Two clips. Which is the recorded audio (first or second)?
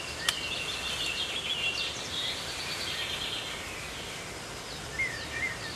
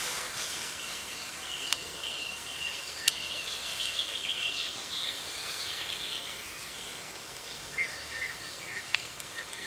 first